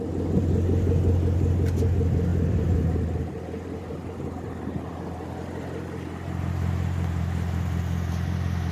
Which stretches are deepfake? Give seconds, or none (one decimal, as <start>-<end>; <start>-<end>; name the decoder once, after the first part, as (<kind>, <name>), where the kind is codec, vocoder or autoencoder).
none